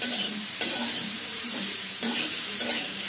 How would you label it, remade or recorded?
remade